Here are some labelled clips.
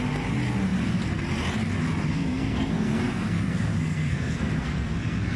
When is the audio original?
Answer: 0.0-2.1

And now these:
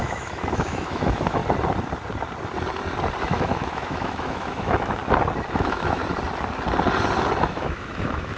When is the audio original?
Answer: 1.4-3.2; 5.0-5.5; 6.0-7.4

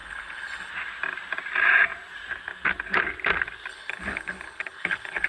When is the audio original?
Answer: 0.7-3.7